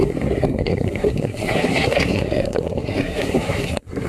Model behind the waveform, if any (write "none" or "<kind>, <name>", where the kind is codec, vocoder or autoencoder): codec, SNAC